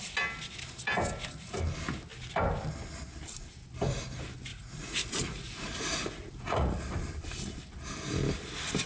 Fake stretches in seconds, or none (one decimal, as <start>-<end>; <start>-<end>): 4.5-6.8